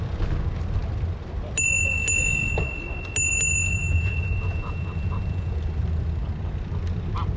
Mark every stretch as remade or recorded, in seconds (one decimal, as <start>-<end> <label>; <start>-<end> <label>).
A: 0.0-3.8 recorded; 3.8-5.6 remade; 5.6-7.4 recorded